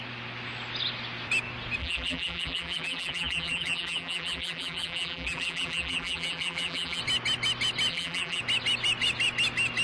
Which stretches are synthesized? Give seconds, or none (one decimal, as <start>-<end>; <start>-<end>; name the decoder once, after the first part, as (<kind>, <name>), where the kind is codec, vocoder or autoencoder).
1.8-7.0 (vocoder, BigVGAN v2); 7.9-8.4